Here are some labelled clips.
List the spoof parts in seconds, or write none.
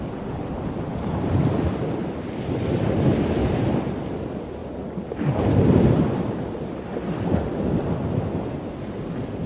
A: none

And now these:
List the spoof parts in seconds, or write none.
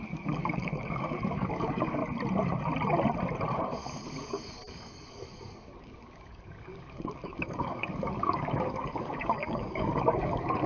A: 0.0-2.0; 3.5-10.7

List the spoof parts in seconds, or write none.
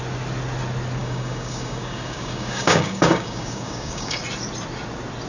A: 1.0-4.2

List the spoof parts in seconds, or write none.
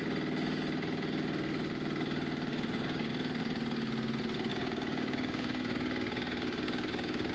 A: 2.5-3.1; 4.5-7.3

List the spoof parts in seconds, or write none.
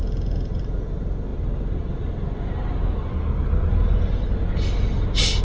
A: none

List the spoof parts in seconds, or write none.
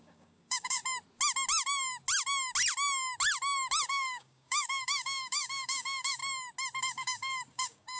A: 0.0-0.8; 3.9-6.2; 6.8-8.0